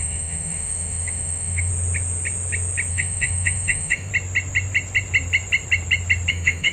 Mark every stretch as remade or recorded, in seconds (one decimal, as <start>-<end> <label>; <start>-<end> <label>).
0.0-1.7 remade; 1.7-2.9 recorded; 2.9-4.1 remade; 4.1-6.3 recorded; 6.3-6.7 remade